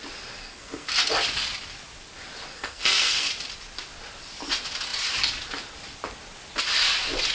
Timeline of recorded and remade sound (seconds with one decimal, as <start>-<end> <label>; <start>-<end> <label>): 0.0-0.4 recorded; 0.4-0.9 remade; 0.9-2.5 recorded; 2.5-3.3 remade; 3.3-7.3 recorded